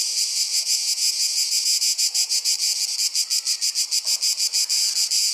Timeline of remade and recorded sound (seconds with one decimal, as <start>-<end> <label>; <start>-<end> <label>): 0.0-0.5 recorded; 0.5-2.5 remade; 2.5-5.3 recorded